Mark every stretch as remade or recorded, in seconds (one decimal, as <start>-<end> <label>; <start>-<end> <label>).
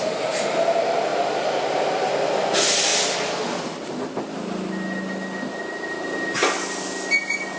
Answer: 0.0-7.6 recorded